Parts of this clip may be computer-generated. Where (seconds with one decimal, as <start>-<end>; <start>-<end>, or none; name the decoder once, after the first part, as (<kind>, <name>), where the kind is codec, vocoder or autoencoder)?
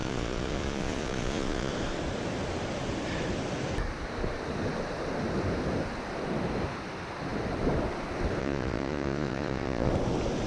0.0-1.7 (vocoder, Vocos); 8.4-9.9